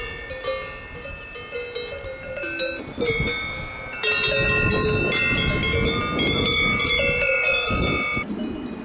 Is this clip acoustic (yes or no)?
yes